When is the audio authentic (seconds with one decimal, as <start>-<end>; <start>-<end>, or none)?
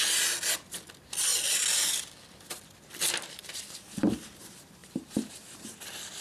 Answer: 0.0-4.8; 5.8-6.2